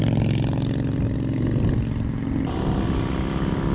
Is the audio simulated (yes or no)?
no